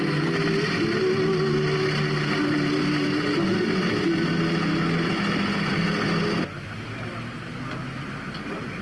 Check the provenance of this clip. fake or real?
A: real